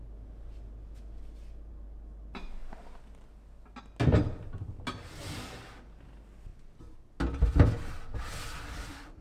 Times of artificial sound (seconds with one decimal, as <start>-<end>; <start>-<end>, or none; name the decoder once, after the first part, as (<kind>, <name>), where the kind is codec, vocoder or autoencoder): none